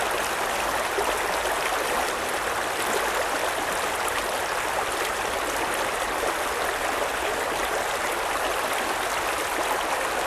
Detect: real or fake real